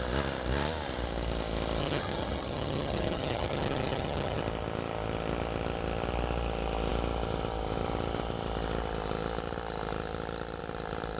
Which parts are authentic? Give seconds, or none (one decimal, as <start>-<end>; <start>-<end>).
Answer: 0.0-1.8; 4.4-11.2